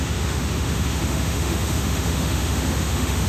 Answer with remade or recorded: remade